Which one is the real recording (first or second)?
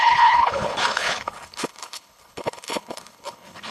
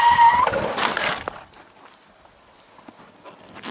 second